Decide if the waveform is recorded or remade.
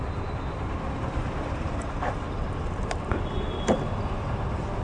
recorded